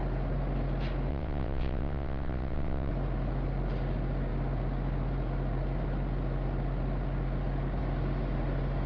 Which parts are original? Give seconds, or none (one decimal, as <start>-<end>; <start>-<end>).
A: 0.0-1.1; 2.9-8.9